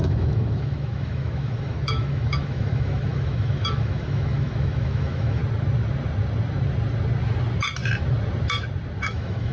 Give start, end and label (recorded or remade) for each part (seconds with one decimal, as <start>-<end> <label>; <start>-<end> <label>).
0.0-5.4 remade; 5.4-9.0 recorded; 9.0-9.5 remade